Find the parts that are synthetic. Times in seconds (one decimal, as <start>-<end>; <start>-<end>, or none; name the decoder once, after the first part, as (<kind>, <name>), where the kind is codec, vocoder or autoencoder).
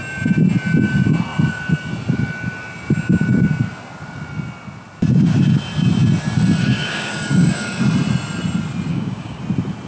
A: 6.6-7.8 (codec, DAC); 8.9-9.4